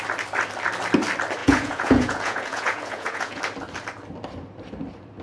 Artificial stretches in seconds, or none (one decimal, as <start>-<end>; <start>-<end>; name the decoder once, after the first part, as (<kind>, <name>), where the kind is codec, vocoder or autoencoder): 1.4-3.4 (vocoder, Vocos)